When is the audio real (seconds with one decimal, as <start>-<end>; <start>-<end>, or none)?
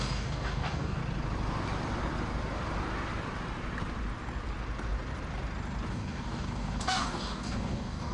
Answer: 1.0-5.9